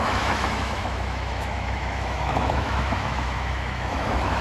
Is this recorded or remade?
remade